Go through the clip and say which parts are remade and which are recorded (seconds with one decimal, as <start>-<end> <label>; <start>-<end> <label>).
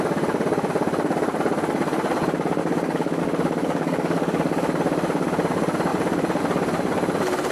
0.0-2.6 recorded; 2.6-3.2 remade; 3.2-3.6 recorded; 3.6-4.7 remade; 4.7-7.5 recorded